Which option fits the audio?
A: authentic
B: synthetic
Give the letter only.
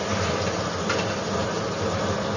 A